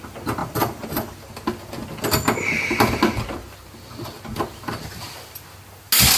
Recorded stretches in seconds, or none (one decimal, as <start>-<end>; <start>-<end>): 0.0-0.4; 1.3-6.2